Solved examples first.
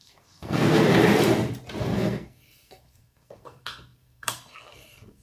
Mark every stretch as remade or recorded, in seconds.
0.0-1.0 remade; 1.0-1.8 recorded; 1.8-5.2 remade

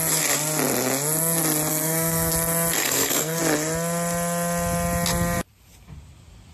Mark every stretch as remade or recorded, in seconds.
0.0-1.7 recorded; 1.7-2.3 remade; 2.3-2.8 recorded; 2.8-3.4 remade; 3.4-6.5 recorded

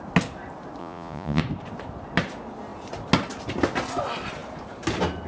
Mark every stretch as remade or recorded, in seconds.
0.0-0.8 recorded; 0.8-1.4 remade; 1.4-5.3 recorded

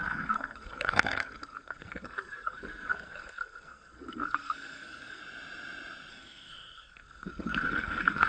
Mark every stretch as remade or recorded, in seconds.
0.0-5.2 remade; 5.2-6.1 recorded; 6.1-8.3 remade

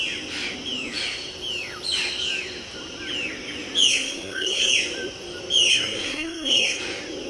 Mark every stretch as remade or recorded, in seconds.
0.0-3.9 recorded; 3.9-4.7 remade; 4.7-5.7 recorded; 5.7-6.8 remade; 6.8-7.3 recorded